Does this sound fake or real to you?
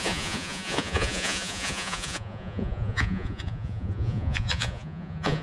fake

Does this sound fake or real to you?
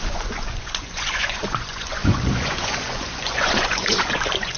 fake